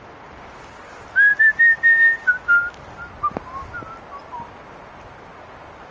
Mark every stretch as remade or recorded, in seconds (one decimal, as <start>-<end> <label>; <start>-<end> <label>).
0.0-5.9 recorded